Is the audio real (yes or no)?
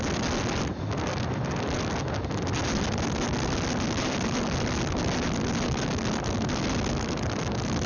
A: yes